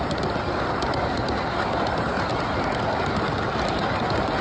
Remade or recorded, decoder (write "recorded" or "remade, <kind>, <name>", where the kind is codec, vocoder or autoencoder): recorded